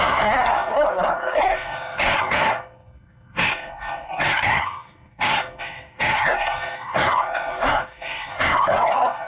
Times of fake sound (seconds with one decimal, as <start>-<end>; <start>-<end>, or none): 0.0-9.3